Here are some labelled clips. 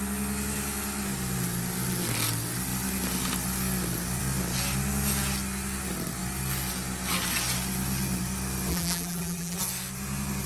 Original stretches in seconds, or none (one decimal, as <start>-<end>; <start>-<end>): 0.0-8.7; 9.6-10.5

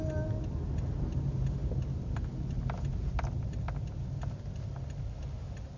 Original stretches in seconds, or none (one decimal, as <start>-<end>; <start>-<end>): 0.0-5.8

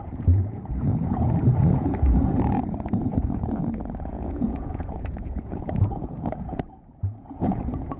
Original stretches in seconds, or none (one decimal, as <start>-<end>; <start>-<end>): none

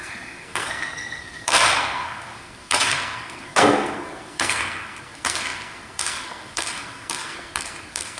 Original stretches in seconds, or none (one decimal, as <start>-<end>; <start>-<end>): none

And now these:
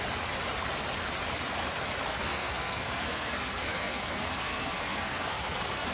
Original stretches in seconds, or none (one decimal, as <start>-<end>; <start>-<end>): 0.0-2.1

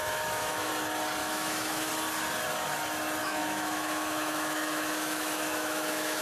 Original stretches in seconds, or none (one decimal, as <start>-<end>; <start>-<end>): 0.7-1.2; 1.9-3.2

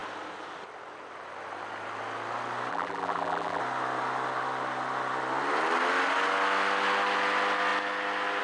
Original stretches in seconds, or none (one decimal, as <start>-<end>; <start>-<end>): 0.0-2.7; 3.6-8.4